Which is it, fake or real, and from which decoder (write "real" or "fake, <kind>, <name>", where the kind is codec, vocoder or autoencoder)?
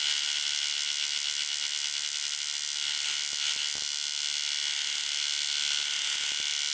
real